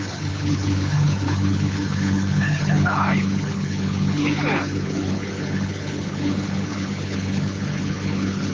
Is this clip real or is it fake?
fake